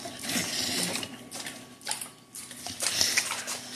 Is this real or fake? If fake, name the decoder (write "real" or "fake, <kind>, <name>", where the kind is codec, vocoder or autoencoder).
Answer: real